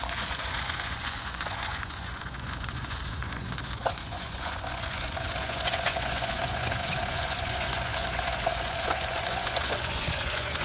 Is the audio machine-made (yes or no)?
yes